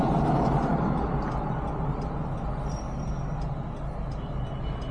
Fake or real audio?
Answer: real